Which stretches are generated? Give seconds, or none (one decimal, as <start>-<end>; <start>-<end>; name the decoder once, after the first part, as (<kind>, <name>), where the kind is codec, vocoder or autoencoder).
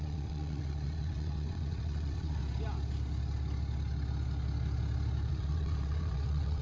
0.0-2.4 (vocoder, WaveNeXt); 5.3-6.6